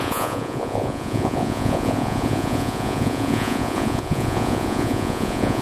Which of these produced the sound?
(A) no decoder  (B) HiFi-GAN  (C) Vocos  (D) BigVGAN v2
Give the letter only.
C